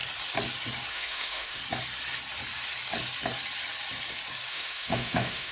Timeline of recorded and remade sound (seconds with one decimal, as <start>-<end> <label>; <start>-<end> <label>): 0.0-0.9 recorded; 0.9-1.6 remade; 1.6-4.5 recorded; 4.5-5.5 remade